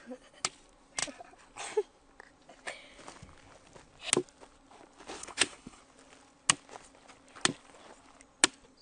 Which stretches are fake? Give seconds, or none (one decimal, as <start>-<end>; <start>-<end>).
5.2-5.8

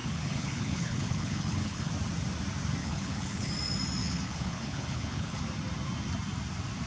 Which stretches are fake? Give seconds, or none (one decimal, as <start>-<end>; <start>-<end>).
0.0-1.9; 2.8-3.5; 4.0-5.4

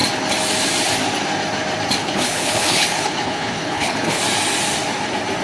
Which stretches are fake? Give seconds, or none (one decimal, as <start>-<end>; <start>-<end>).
2.0-4.2

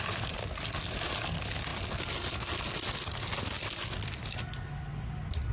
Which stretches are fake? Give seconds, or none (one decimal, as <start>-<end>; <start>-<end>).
none